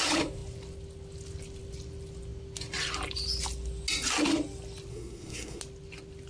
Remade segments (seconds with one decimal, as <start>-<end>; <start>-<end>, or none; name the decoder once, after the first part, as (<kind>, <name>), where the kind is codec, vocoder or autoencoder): 4.9-5.6 (codec, SNAC)